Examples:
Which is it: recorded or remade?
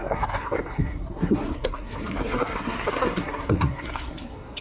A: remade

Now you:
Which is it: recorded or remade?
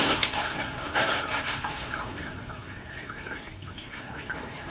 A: remade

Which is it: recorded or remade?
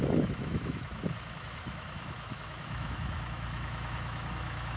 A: remade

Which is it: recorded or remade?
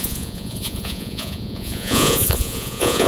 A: remade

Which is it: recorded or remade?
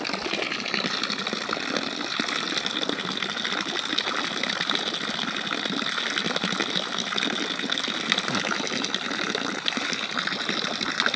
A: recorded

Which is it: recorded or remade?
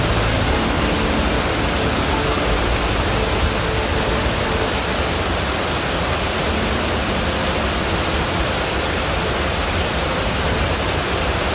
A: recorded